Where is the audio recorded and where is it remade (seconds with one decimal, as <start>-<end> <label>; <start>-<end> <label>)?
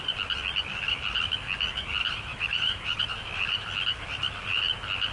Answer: 0.0-2.3 recorded; 2.3-3.0 remade; 3.0-5.1 recorded